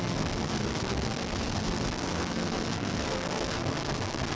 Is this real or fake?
fake